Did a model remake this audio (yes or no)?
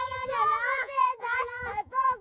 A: yes